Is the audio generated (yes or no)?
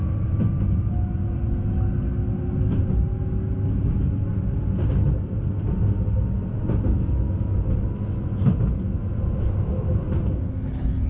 no